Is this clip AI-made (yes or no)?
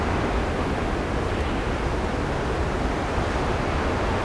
no